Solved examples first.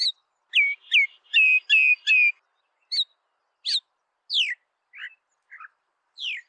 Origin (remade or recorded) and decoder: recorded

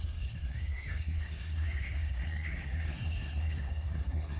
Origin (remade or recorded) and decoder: remade, codec, SNAC